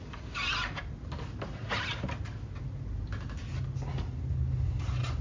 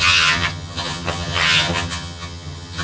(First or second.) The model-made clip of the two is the second